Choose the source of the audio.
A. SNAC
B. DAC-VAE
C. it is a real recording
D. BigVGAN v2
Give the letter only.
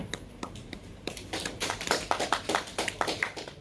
D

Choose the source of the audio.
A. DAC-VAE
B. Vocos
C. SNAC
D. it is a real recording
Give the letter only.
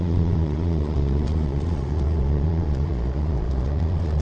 B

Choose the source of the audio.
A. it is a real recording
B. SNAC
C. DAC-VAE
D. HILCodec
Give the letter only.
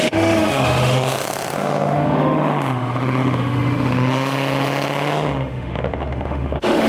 C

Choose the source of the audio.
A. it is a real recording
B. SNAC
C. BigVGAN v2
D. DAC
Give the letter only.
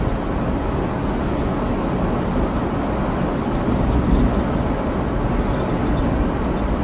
A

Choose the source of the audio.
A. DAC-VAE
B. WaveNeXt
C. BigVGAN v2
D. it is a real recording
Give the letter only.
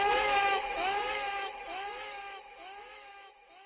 A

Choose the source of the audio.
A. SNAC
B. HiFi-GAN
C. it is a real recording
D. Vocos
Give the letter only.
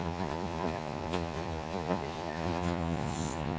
D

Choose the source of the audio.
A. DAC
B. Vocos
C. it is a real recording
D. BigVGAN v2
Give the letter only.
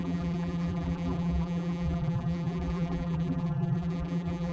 D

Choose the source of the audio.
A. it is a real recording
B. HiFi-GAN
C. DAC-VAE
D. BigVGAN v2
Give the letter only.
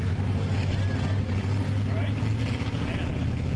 A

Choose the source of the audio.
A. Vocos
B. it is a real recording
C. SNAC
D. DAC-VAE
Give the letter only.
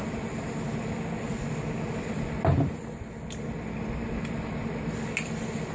B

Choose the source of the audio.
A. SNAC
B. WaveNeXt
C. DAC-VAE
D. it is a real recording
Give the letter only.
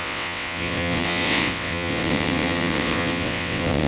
B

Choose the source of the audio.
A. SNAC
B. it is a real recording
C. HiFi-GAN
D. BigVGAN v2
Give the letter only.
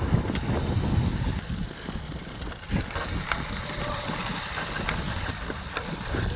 B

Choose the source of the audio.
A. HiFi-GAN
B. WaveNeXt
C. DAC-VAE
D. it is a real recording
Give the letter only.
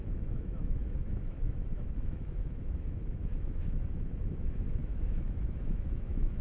C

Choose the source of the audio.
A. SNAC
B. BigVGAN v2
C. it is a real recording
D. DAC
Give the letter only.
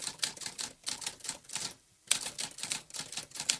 B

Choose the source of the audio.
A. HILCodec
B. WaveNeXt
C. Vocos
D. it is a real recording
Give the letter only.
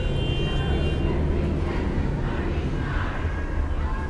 D